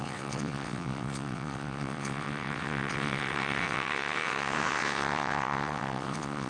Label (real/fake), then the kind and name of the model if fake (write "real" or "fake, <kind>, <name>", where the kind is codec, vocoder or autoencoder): fake, vocoder, WaveNeXt